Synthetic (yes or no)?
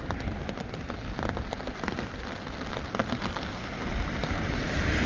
no